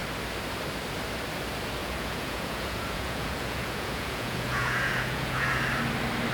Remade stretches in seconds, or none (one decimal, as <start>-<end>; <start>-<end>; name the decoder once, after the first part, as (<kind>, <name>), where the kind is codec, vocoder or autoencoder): 1.8-5.6 (vocoder, Vocos)